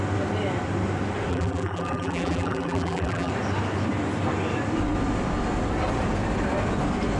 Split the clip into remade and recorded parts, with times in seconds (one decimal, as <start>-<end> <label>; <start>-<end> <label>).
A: 0.0-1.3 recorded; 1.3-3.3 remade; 3.3-7.2 recorded